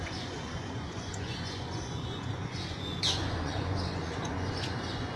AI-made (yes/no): yes